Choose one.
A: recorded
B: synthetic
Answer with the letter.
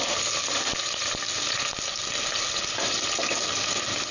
A